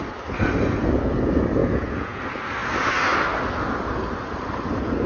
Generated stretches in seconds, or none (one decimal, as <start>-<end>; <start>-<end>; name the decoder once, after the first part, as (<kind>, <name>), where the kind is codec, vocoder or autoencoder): 1.6-2.2 (vocoder, Vocos)